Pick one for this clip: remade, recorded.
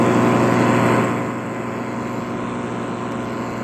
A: recorded